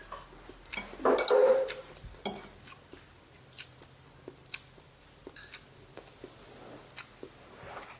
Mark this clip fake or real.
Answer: real